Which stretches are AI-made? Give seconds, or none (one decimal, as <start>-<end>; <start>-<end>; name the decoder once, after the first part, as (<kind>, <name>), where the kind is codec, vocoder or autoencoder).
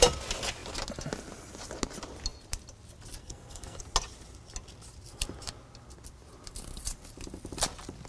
3.2-3.8 (codec, SNAC)